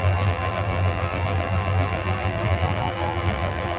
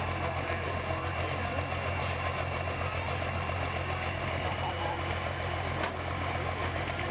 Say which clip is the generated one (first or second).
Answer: first